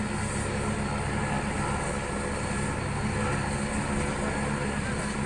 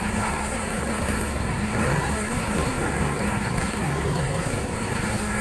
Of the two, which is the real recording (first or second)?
first